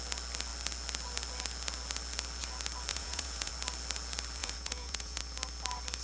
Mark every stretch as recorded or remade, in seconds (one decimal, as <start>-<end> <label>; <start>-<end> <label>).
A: 0.0-2.9 recorded; 2.9-3.5 remade; 3.5-4.4 recorded; 4.4-5.2 remade; 5.2-6.0 recorded